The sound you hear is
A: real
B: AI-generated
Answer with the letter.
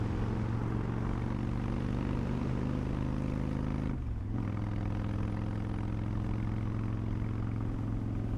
A